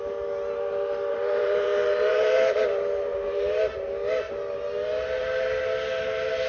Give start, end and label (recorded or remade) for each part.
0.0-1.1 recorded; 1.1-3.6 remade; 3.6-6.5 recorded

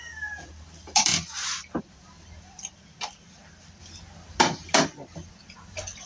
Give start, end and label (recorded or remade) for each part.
0.0-1.1 remade; 1.1-1.8 recorded; 1.8-3.8 remade; 3.8-4.4 recorded; 4.4-6.1 remade